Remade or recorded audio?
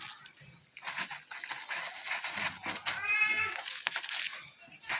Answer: recorded